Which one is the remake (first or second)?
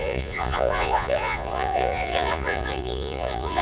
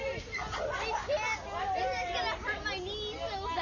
first